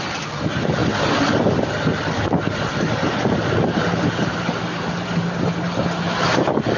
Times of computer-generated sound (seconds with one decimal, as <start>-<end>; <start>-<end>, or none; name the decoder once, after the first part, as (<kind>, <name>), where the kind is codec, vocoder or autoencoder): none